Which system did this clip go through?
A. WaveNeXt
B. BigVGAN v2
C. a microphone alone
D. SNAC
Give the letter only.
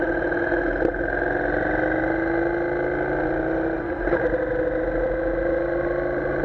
C